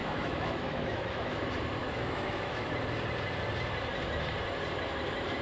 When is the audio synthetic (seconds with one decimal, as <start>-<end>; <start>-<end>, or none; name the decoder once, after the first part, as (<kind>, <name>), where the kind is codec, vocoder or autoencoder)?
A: 0.0-1.4 (autoencoder, DAC-VAE); 1.8-2.7